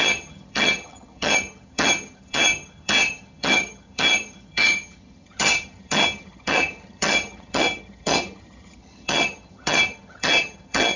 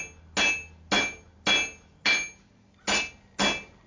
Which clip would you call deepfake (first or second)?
first